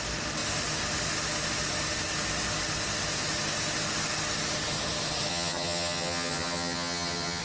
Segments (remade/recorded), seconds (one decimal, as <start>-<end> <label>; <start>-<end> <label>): 0.0-5.3 recorded; 5.3-7.4 remade